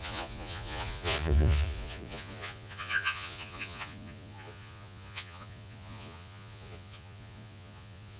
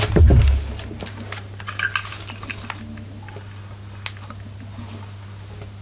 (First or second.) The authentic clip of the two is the second